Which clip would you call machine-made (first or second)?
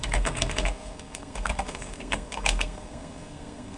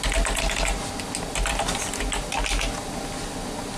first